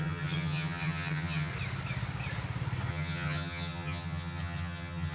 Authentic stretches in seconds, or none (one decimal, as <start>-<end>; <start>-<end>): 1.5-2.9